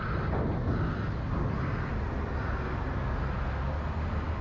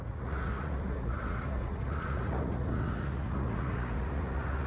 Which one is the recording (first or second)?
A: first